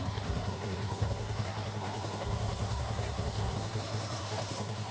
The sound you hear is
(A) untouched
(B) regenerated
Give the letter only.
B